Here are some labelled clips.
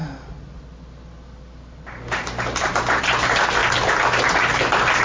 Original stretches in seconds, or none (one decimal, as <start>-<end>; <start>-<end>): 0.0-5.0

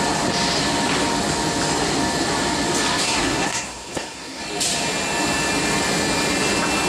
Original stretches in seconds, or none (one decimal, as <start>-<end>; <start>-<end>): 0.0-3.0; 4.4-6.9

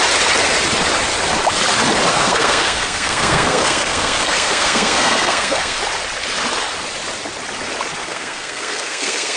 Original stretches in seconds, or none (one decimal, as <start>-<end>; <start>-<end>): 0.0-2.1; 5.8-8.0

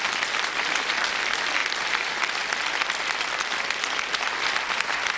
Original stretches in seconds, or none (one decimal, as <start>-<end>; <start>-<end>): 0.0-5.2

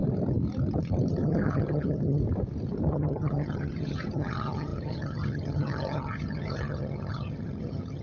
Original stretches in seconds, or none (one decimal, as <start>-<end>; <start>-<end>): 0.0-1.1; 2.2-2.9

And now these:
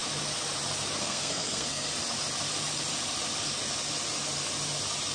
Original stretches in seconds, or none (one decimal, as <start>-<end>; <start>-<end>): 0.0-1.0; 1.9-5.1